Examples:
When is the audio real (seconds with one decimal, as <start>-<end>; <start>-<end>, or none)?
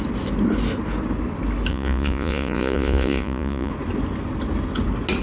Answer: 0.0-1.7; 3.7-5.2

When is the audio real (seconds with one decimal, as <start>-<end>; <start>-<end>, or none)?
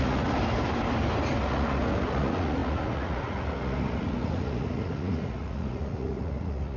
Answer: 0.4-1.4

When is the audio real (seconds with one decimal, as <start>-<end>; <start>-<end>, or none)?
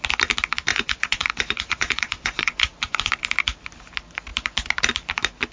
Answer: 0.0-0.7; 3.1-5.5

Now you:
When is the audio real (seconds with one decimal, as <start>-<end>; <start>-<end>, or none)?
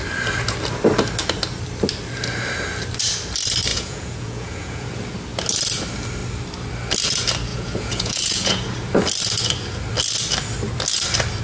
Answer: 0.0-3.7; 4.9-7.5; 8.6-11.4